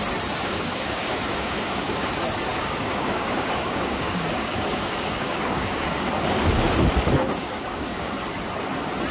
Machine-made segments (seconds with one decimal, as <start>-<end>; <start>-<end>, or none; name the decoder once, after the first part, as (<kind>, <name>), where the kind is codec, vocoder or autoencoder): 0.4-2.1 (codec, DAC); 2.5-6.1; 7.4-8.1

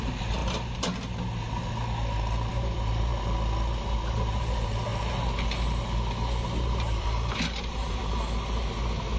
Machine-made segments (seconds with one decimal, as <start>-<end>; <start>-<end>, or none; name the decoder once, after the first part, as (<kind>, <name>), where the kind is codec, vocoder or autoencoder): 0.0-0.4 (vocoder, BigVGAN v2); 2.5-3.1; 4.0-4.9; 6.4-8.0

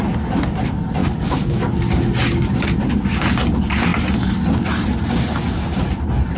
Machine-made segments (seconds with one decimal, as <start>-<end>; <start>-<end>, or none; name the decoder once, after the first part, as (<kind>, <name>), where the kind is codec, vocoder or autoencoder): 1.0-1.6 (codec, DAC)

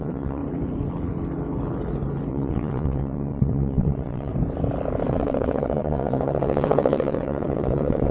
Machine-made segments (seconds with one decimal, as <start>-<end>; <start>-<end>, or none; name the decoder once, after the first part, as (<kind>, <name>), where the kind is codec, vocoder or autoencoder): 0.0-0.4 (vocoder, WaveNeXt); 2.3-4.3; 5.1-8.1

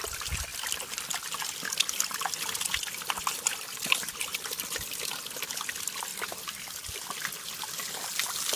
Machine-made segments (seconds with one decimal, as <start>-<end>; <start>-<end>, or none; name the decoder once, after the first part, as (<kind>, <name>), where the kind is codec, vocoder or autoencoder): none

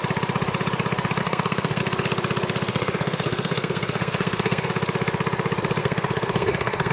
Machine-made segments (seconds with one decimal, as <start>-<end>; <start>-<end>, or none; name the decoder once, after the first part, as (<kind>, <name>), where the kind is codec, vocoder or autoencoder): 1.2-1.8 (codec, SNAC); 2.7-4.7; 5.8-6.9

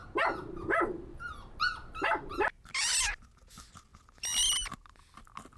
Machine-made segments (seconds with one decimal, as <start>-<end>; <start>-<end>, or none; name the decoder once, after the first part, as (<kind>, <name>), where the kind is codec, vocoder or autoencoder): none

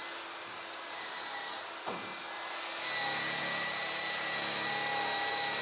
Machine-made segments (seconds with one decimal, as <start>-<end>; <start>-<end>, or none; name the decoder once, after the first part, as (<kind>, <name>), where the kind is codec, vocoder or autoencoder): none